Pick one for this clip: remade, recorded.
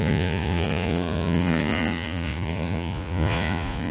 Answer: remade